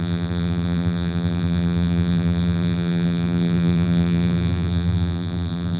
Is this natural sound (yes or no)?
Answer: no